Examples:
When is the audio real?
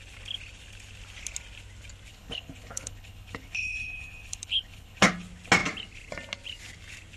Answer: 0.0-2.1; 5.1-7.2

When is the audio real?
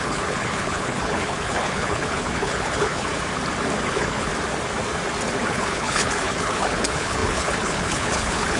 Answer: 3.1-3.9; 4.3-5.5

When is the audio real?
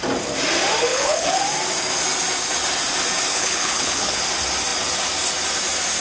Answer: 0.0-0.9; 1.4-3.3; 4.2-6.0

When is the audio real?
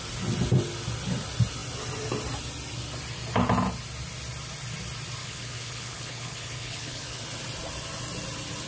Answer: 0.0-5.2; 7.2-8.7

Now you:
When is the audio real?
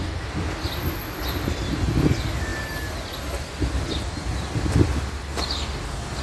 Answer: 0.0-6.2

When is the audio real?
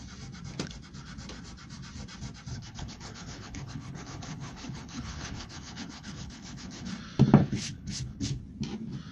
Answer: 0.0-2.5; 6.9-7.4; 8.4-9.1